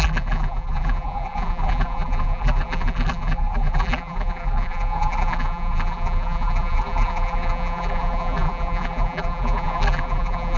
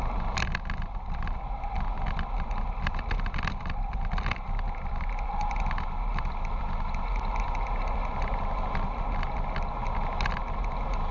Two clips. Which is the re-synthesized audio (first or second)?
first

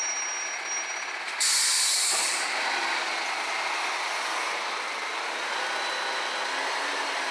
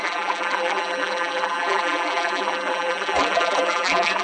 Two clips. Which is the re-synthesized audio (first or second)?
second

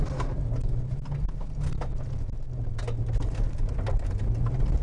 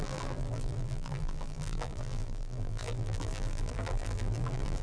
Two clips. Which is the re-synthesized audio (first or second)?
second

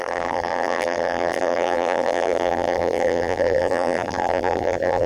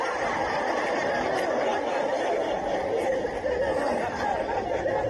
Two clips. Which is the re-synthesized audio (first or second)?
first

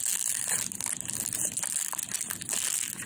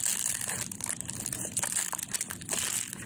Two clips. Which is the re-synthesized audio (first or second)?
second